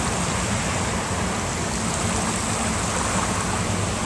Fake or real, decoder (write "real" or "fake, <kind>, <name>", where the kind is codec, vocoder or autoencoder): real